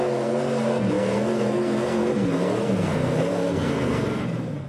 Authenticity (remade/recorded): remade